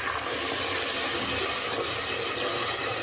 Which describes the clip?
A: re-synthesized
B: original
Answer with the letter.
B